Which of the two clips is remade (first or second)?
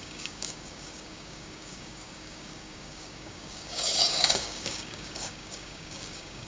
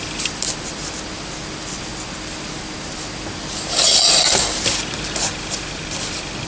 first